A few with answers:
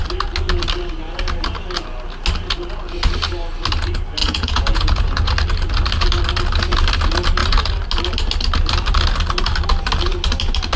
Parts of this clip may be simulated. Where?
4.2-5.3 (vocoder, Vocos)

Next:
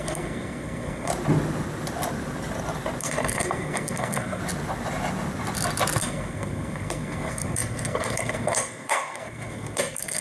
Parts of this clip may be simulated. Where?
0.0-1.1 (codec, SNAC); 3.0-4.4; 6.0-10.2

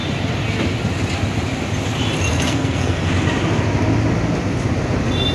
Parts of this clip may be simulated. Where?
2.3-3.1 (codec, SNAC)

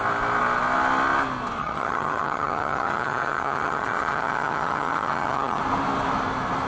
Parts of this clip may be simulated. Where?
1.6-5.6 (vocoder, HiFi-GAN)

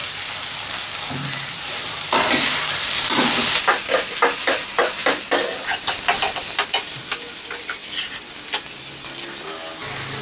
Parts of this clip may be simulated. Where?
none

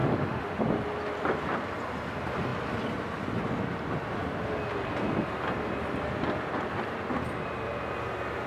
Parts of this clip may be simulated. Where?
0.0-0.6 (autoencoder, DAC-VAE)

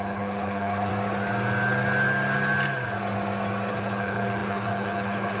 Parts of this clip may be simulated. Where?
0.0-0.9 (codec, HILCodec); 3.7-5.4

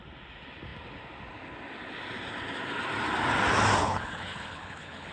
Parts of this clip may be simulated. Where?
3.8-5.1 (codec, HILCodec)